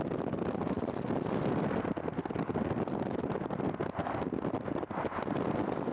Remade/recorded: recorded